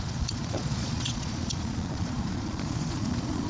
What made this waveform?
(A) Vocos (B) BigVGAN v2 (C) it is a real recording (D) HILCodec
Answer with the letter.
A